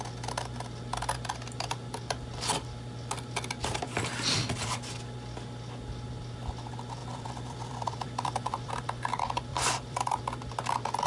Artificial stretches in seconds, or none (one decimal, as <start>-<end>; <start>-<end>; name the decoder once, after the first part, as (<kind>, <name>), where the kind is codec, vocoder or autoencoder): 7.0-8.7 (vocoder, BigVGAN v2); 9.5-10.2